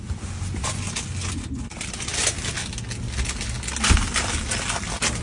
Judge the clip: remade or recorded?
recorded